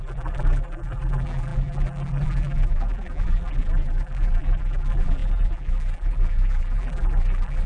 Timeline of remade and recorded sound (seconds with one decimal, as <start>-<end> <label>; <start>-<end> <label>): 0.0-7.7 remade